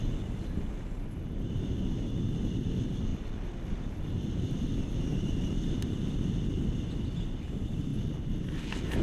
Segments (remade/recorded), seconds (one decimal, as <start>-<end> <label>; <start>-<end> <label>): 0.0-5.1 recorded; 5.1-6.0 remade; 6.0-9.0 recorded

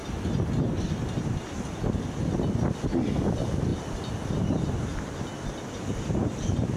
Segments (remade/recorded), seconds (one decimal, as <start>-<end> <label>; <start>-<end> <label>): 0.0-6.8 recorded

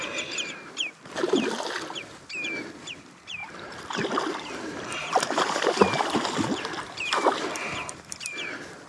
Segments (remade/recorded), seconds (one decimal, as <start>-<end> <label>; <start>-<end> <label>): 0.0-1.2 remade; 1.2-2.2 recorded; 2.2-8.9 remade

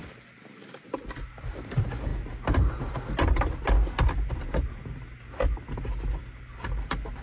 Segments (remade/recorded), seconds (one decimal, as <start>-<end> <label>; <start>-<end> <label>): 0.0-2.1 remade; 2.1-6.4 recorded; 6.4-7.2 remade

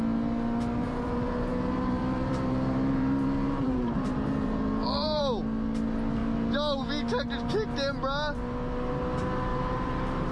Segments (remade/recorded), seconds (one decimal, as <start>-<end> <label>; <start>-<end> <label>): 0.0-0.8 recorded; 0.8-5.2 remade; 5.2-9.5 recorded; 9.5-10.3 remade

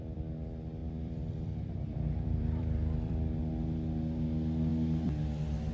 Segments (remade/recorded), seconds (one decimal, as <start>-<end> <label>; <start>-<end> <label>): 0.0-0.8 recorded; 0.8-3.4 remade; 3.4-5.7 recorded